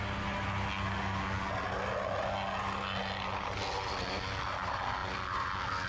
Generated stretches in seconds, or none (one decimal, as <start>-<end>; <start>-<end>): none

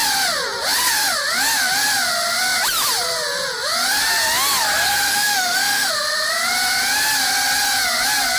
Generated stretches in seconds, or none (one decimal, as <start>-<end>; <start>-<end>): 5.1-5.9

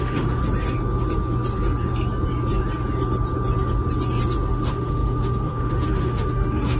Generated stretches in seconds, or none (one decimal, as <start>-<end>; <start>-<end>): 0.0-0.4; 4.5-6.8

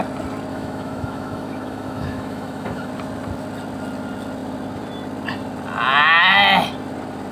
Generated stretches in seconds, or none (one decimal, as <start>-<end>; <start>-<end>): 0.5-2.9

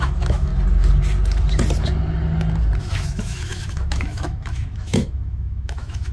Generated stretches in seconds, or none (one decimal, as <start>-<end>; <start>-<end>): 0.0-0.5; 2.8-6.1

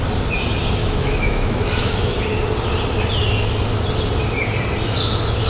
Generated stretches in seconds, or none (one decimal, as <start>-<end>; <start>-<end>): 0.8-2.2

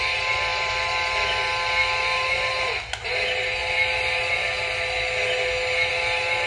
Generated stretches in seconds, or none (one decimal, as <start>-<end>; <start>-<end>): none

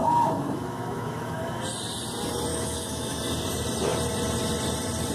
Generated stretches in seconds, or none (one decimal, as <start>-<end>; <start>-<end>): 0.0-1.6; 2.5-3.2